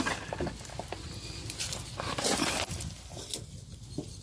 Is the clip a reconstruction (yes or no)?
no